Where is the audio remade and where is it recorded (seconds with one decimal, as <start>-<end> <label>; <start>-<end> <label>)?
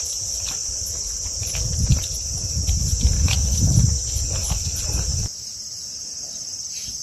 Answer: 0.0-7.0 recorded